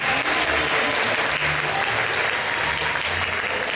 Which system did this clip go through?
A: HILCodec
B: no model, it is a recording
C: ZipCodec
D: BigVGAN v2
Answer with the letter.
B